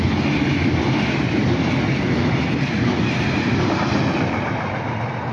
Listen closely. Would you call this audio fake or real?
real